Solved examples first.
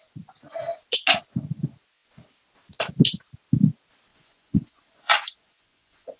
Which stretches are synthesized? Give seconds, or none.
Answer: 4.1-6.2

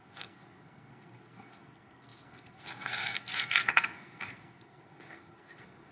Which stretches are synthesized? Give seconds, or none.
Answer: 0.0-5.9

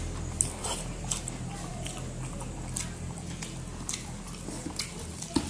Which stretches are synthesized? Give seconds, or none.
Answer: none

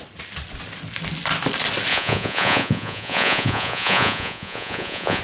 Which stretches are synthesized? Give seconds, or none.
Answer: 1.9-5.2

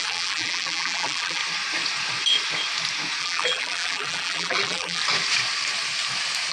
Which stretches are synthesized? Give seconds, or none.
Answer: 0.0-1.4; 3.2-5.0

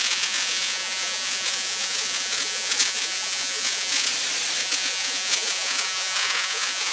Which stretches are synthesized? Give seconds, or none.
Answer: 0.0-4.1; 4.6-6.9

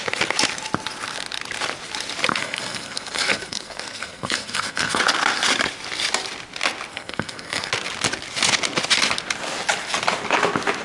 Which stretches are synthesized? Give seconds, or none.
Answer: 2.3-5.0; 6.9-7.7